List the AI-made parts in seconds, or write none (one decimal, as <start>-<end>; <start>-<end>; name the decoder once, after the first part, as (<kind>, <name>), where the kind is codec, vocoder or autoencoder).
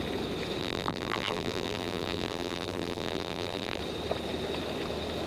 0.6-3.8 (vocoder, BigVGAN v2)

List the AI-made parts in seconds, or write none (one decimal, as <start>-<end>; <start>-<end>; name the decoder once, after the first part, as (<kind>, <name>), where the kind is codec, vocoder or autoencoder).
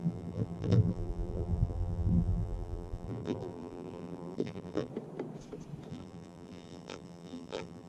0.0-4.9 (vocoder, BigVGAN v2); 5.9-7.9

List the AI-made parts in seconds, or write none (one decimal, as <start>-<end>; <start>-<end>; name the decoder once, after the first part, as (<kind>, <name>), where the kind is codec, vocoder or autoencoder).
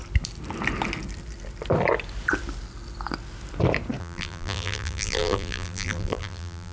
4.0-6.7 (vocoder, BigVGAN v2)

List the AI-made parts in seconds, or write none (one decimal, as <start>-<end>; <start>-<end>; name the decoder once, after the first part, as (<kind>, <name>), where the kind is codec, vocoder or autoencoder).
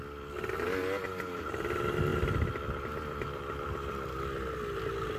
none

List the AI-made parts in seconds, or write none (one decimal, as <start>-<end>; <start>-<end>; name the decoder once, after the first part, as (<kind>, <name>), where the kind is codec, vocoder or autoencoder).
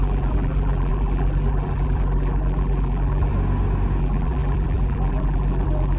0.0-3.3 (vocoder, BigVGAN v2); 4.0-6.0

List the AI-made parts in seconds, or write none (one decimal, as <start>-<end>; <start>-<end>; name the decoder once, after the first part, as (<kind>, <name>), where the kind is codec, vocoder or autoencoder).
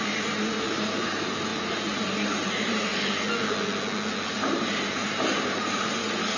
0.0-2.9 (vocoder, BigVGAN v2); 4.3-6.4